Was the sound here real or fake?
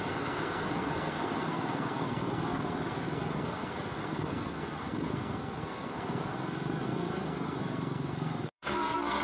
fake